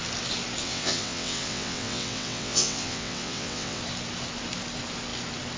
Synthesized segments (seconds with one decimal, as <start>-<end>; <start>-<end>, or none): 0.6-3.8